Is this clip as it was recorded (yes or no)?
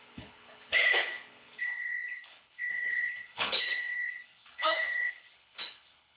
no